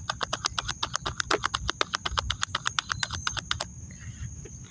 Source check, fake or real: real